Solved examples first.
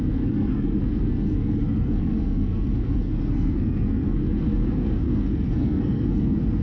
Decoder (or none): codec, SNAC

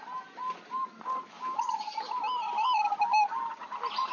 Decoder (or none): none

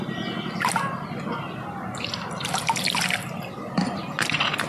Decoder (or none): none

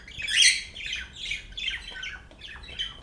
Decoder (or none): none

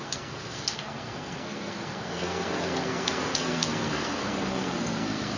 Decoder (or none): codec, SNAC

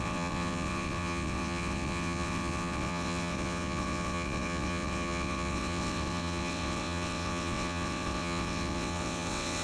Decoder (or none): vocoder, WaveNeXt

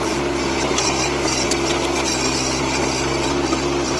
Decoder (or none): none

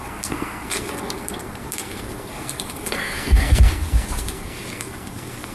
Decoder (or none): codec, SNAC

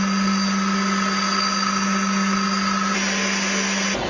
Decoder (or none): none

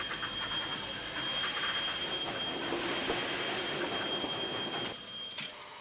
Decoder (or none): none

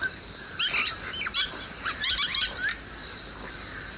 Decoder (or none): none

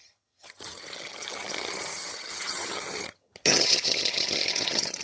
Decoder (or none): vocoder, HiFi-GAN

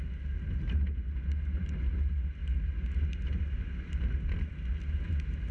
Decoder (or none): none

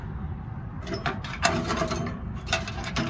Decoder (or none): vocoder, BigVGAN v2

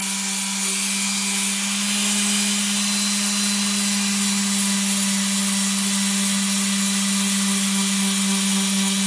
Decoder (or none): none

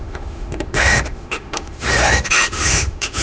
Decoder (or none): autoencoder, DAC-VAE